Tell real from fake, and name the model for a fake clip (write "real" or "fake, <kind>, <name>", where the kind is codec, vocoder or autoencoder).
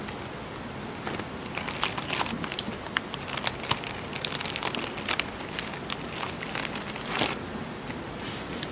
real